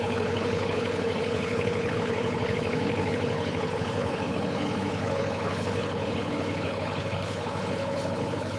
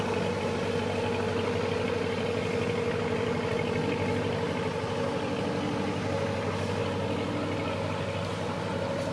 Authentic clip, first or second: second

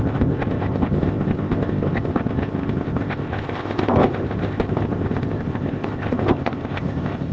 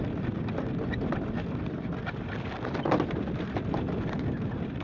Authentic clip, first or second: second